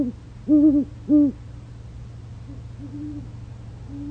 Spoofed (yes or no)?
no